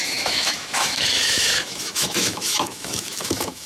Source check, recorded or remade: remade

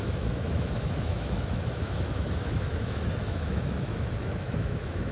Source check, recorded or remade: remade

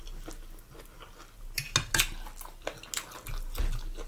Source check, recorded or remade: recorded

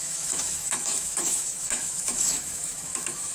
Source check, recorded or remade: remade